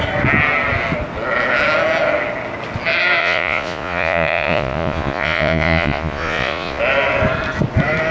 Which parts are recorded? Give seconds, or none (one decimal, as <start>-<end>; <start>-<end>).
0.0-3.2; 6.8-8.1